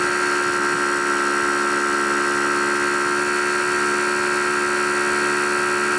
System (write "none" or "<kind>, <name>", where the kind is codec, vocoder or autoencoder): none